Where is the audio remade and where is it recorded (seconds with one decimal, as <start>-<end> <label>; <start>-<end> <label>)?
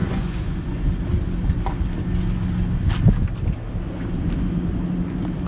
0.0-0.8 remade; 0.8-5.5 recorded